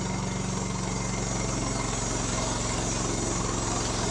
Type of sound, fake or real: real